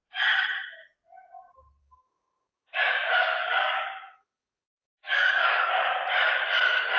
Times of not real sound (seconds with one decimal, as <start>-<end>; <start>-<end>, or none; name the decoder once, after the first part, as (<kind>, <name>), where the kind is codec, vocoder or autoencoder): 1.8-2.9 (codec, DAC); 3.4-5.7